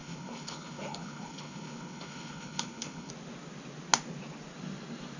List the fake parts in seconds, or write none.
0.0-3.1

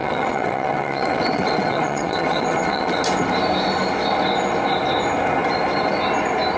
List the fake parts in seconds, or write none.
0.0-3.0

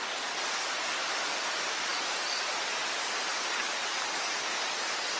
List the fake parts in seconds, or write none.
none

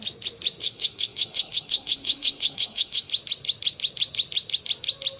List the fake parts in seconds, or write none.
0.6-3.1

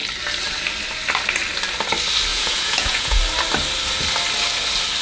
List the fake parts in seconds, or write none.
2.3-3.2

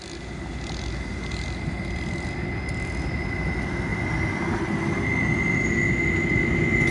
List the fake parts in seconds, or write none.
none